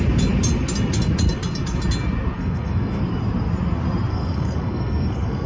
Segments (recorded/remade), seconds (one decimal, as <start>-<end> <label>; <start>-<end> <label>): 0.0-2.4 recorded; 2.4-3.0 remade; 3.0-4.1 recorded; 4.1-5.5 remade